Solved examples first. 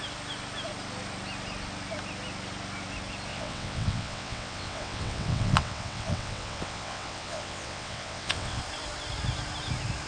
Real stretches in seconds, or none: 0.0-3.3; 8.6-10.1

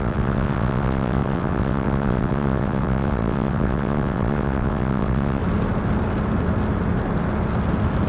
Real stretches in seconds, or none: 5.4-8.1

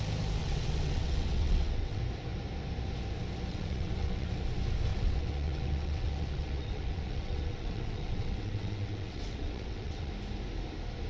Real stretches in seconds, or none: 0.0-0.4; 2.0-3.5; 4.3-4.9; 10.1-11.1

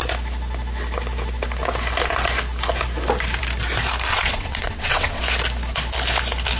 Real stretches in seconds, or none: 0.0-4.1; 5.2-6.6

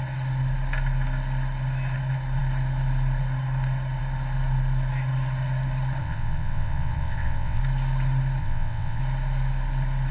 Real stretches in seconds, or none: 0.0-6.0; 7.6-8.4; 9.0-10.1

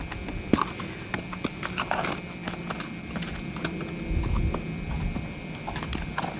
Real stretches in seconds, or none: 0.0-6.4